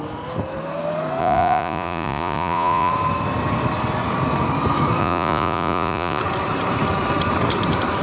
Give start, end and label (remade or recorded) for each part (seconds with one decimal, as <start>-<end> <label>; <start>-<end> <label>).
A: 0.0-1.2 recorded; 1.2-2.9 remade; 2.9-5.0 recorded; 5.0-6.2 remade; 6.2-8.0 recorded